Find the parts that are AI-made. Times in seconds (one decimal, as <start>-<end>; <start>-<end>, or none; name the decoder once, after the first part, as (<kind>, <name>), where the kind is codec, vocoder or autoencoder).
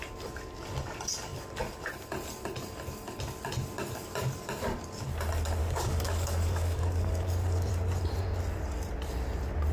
5.6-7.7 (codec, DAC)